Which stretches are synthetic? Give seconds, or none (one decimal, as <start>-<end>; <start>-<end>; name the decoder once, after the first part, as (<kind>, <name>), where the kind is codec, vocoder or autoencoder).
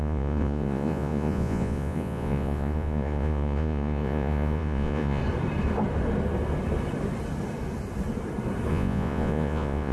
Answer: 0.0-5.2 (vocoder, Vocos); 8.7-9.9